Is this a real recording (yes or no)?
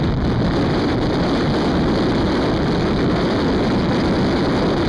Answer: yes